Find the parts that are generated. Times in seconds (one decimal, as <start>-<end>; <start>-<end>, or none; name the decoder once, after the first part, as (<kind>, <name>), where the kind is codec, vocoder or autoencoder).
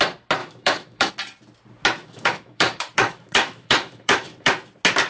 0.4-1.1 (autoencoder, DAC-VAE); 2.0-4.5